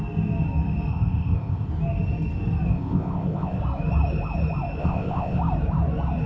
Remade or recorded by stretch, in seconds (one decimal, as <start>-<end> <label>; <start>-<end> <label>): 0.0-0.9 recorded; 0.9-1.7 remade; 1.7-2.7 recorded; 2.7-3.6 remade; 3.6-4.8 recorded; 4.8-5.4 remade; 5.4-6.3 recorded